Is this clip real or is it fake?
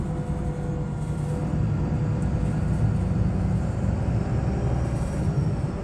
real